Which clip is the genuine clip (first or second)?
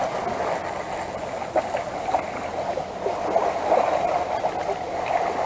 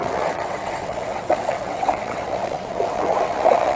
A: first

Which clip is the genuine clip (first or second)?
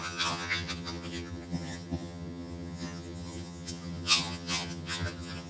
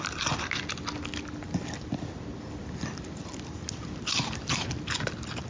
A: second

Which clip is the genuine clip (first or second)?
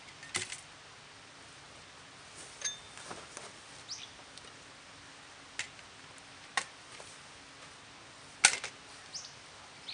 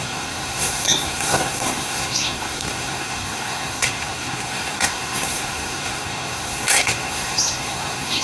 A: first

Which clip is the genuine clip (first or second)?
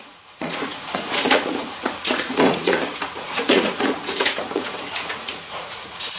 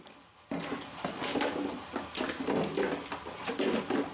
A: second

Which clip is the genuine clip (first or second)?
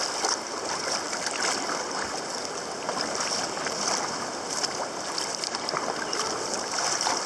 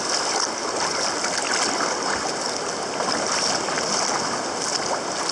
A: second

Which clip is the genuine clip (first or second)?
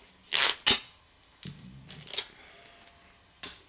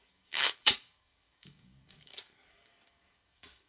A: first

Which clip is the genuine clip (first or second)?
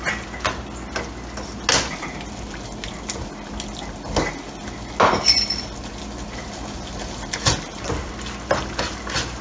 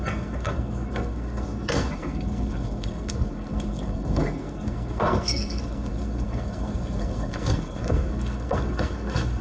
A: first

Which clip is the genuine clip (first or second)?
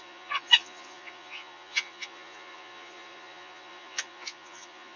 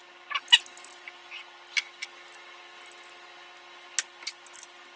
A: second